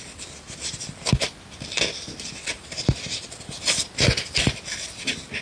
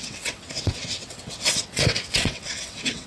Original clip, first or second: first